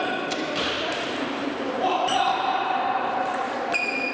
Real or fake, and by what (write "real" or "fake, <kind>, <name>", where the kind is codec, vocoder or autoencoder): fake, vocoder, BigVGAN v2